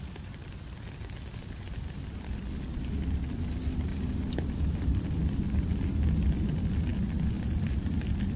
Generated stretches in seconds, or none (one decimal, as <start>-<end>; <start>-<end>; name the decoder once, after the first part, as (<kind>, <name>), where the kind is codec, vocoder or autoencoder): 0.0-3.9 (vocoder, BigVGAN v2); 4.8-6.9; 7.6-8.4